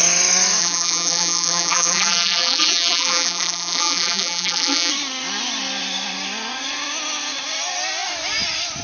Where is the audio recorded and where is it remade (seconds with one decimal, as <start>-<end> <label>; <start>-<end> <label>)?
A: 0.0-0.6 recorded; 0.6-4.9 remade; 4.9-8.8 recorded